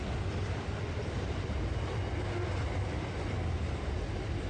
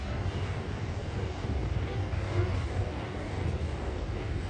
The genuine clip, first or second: first